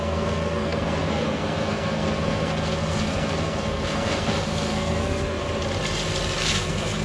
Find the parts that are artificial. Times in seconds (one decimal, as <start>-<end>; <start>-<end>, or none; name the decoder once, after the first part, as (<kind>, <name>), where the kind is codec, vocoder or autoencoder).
0.0-5.4 (codec, SNAC); 6.4-7.0

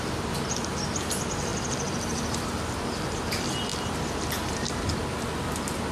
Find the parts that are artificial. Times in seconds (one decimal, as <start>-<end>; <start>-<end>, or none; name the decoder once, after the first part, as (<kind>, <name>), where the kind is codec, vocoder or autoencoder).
none

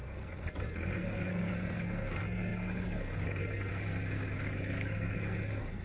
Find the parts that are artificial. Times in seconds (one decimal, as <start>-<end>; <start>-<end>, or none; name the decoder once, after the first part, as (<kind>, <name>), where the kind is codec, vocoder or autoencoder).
0.0-5.8 (codec, SNAC)

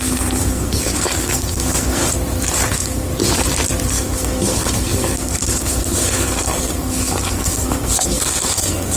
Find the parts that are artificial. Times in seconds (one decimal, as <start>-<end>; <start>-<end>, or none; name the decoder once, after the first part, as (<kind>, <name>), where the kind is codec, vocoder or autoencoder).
0.0-2.0 (codec, SNAC); 2.7-3.1; 3.9-9.0